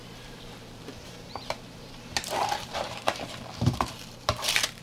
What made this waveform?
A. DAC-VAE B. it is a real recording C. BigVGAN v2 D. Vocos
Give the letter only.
C